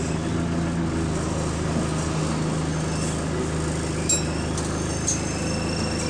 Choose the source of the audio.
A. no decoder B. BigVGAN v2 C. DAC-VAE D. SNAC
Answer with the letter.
A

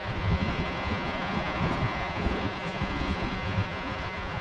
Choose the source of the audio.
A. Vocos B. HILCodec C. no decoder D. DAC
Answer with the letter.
A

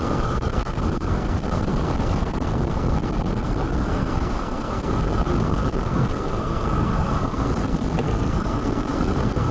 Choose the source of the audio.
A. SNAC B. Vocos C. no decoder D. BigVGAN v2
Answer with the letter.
A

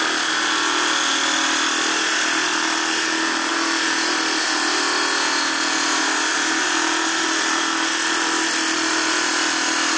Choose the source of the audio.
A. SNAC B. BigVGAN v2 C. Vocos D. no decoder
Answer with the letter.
D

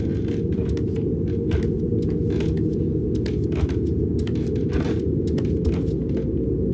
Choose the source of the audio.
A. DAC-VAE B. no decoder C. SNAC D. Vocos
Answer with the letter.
B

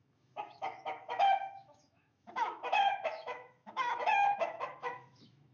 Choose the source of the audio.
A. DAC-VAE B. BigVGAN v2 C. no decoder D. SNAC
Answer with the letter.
A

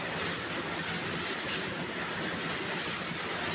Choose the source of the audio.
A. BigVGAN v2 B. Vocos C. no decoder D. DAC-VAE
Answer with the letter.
C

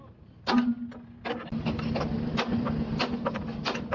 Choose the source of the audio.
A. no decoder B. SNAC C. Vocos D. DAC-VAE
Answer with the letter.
A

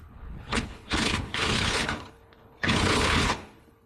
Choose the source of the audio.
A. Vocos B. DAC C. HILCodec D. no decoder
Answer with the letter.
C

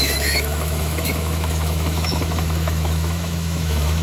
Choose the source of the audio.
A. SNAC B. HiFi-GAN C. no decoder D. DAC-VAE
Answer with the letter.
D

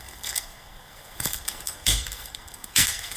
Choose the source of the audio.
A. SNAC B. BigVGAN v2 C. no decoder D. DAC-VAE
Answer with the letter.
A